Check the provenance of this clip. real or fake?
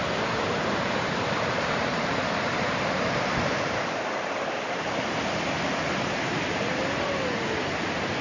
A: fake